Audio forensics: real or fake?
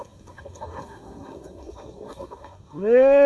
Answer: fake